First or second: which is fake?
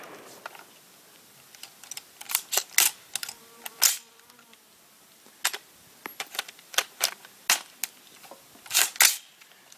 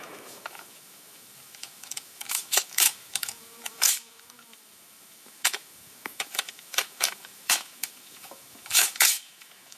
second